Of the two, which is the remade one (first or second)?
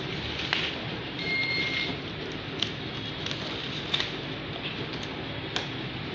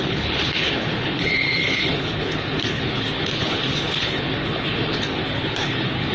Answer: second